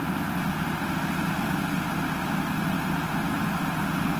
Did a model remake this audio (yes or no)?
no